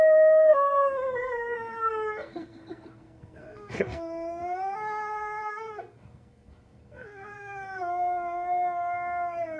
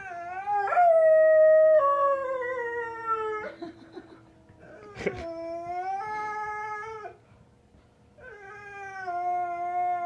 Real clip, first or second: second